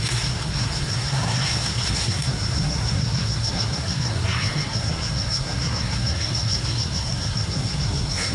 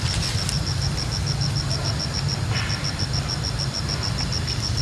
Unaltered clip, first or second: second